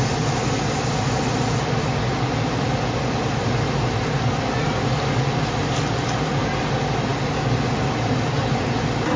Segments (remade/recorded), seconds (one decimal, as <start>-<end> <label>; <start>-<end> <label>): 0.0-9.2 recorded